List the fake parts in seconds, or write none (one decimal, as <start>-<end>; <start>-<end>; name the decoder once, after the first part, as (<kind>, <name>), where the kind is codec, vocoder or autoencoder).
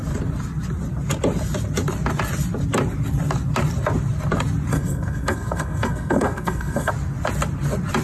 4.7-6.9 (codec, SNAC)